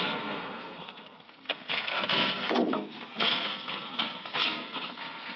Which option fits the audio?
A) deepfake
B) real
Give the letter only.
A